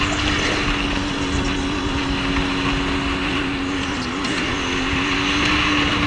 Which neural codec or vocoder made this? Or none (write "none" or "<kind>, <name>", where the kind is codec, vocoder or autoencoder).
none